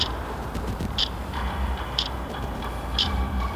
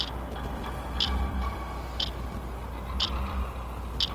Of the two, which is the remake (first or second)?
first